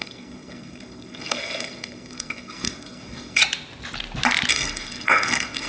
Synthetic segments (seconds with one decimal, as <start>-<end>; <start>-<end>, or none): 0.0-3.4; 4.5-5.7